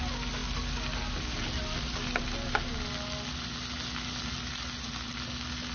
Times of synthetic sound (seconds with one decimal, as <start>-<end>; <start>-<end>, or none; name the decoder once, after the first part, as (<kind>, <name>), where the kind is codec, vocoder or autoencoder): none